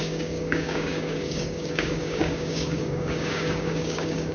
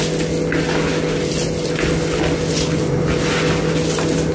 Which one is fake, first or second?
first